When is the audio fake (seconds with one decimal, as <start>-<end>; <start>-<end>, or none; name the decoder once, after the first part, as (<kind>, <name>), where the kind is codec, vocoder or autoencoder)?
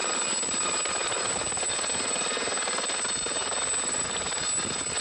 none